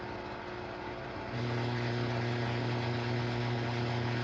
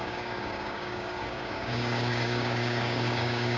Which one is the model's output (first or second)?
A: second